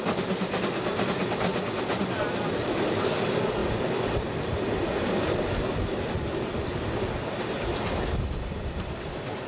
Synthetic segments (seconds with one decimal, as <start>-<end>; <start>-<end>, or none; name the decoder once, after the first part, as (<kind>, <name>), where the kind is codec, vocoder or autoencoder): 0.0-1.5 (vocoder, BigVGAN v2); 2.5-3.6; 4.7-6.7; 8.0-9.5